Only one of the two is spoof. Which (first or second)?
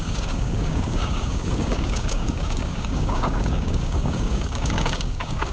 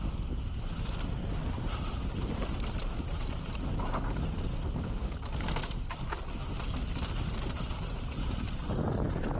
first